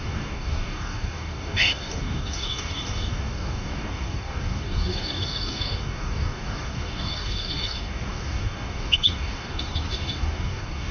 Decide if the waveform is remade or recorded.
remade